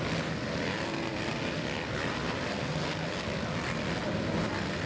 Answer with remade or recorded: recorded